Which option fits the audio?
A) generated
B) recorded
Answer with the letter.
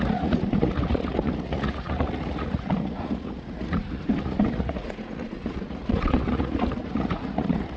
A